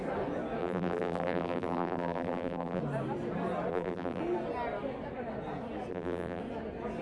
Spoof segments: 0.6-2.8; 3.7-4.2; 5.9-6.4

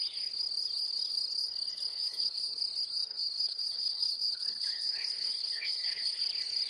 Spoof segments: 1.9-2.6; 3.1-6.2

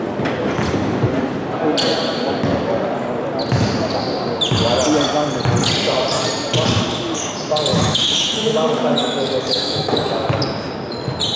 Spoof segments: 7.7-10.4

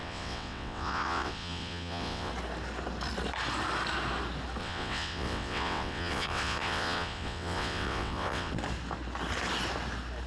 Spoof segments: 0.0-2.3; 4.6-8.5

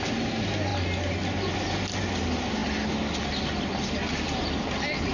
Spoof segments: none